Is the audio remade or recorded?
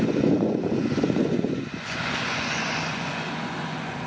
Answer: remade